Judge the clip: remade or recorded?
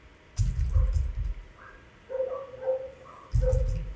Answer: recorded